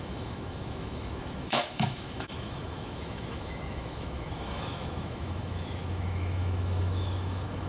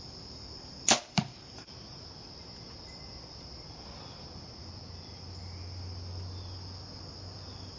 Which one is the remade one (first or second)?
first